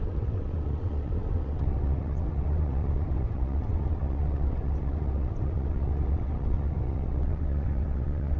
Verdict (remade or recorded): remade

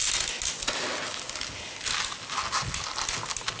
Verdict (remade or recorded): recorded